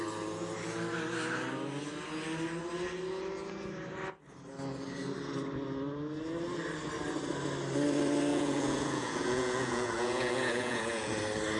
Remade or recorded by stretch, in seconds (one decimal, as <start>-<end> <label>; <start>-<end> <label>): 0.0-8.3 recorded; 8.3-11.1 remade; 11.1-11.6 recorded